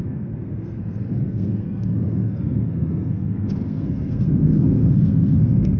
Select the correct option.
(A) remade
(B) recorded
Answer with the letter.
A